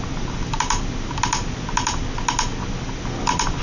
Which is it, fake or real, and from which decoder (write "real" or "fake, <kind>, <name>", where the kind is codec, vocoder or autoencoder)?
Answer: real